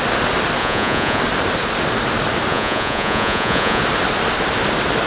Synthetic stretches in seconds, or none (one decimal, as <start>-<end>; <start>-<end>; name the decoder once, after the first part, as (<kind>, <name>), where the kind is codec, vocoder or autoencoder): 0.6-1.2 (vocoder, Vocos); 2.5-3.8